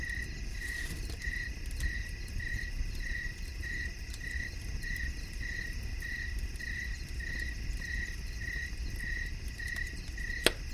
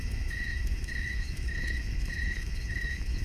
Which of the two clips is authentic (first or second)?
first